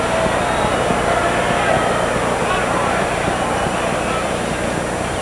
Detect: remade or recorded recorded